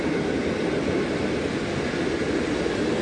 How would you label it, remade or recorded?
recorded